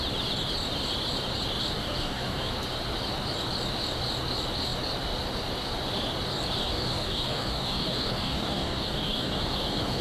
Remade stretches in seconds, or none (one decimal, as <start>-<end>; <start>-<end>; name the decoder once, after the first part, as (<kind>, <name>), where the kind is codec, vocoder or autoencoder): 1.8-2.5 (codec, DAC); 6.6-10.0